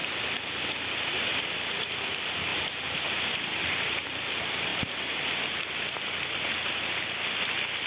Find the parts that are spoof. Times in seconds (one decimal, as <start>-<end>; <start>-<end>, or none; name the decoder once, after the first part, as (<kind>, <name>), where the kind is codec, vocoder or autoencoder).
none